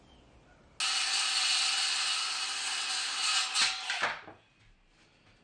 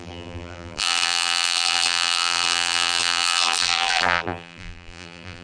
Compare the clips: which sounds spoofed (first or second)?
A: second